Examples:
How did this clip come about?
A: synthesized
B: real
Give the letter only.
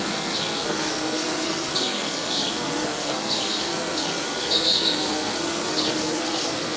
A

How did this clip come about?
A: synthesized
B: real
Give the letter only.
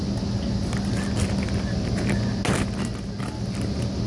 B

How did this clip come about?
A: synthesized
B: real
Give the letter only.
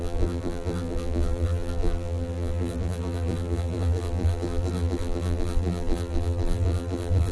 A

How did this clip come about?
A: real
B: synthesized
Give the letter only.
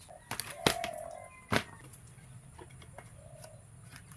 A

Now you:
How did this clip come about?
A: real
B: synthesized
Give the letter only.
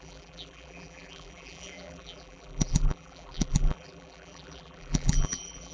B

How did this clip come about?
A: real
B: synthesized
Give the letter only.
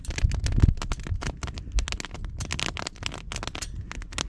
A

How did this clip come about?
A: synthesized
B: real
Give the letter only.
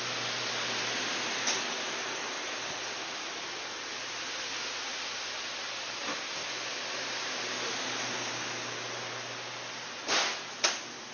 B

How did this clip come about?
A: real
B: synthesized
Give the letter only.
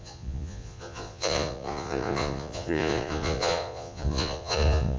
B